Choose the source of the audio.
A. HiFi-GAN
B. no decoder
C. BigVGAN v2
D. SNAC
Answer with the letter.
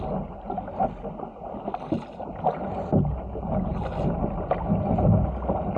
B